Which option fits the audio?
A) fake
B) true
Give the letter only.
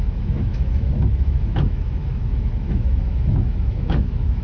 A